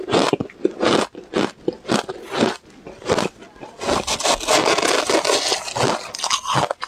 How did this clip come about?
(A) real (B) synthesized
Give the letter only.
A